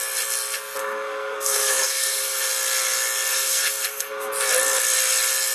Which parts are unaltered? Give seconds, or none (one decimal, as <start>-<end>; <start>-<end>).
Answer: 0.0-0.8; 2.5-3.3; 4.3-5.5